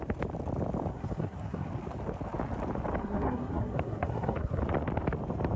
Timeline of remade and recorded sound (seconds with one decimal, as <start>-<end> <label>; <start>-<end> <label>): 0.0-0.9 recorded; 0.9-1.7 remade; 1.7-3.0 recorded; 3.0-4.6 remade; 4.6-5.6 recorded